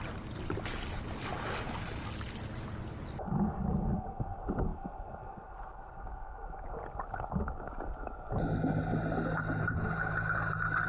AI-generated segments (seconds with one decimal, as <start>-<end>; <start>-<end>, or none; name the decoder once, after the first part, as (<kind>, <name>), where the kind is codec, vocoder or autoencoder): none